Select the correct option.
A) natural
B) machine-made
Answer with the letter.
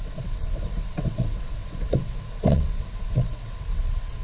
B